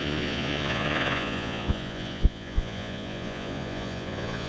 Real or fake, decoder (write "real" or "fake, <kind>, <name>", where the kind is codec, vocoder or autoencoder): fake, vocoder, Vocos